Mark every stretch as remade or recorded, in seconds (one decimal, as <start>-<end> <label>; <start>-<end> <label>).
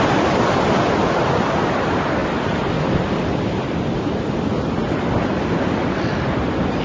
0.0-2.2 recorded; 2.2-6.3 remade; 6.3-6.8 recorded